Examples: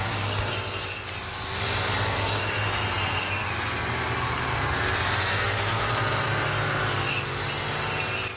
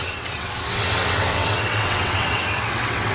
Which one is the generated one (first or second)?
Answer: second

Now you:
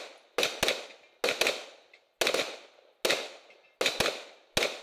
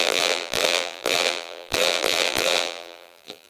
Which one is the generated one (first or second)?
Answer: second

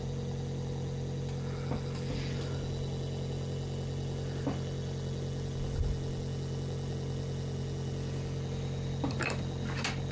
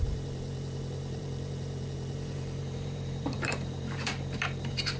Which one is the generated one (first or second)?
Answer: second